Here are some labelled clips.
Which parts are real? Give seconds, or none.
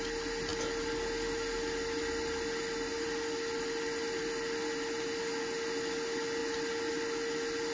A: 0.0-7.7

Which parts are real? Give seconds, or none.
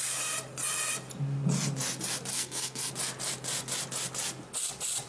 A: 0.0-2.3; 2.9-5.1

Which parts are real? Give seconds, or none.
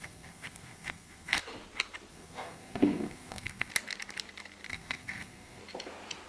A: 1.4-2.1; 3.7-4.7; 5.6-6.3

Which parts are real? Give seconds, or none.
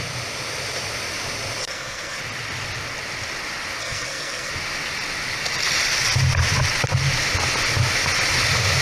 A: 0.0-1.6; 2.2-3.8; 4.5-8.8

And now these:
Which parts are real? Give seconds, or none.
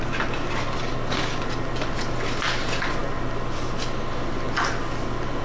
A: 0.0-5.4